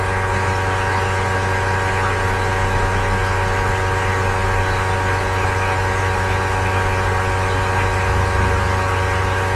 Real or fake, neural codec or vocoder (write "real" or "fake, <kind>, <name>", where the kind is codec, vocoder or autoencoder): real